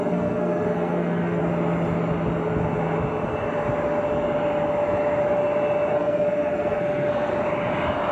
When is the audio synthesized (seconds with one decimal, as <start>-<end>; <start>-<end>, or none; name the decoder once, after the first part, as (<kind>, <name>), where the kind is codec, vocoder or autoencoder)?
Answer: 0.0-1.4 (codec, SNAC); 5.9-7.3